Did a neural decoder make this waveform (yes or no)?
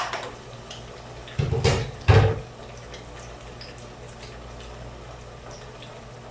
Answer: no